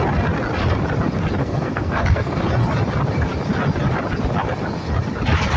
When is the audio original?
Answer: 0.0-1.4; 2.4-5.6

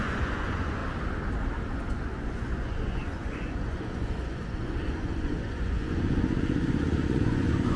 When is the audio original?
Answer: 0.8-1.9

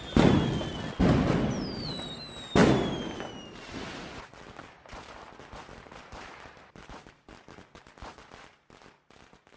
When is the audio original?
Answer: 0.0-9.6